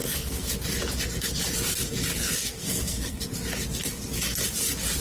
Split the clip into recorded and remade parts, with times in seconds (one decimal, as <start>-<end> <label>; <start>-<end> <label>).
0.0-0.5 remade; 0.5-2.1 recorded; 2.1-3.2 remade; 3.2-5.0 recorded